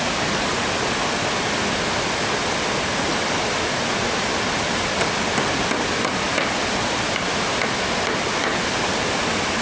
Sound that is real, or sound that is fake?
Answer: real